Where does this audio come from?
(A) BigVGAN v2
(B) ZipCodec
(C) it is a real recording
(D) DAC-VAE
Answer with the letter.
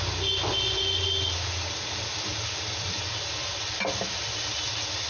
C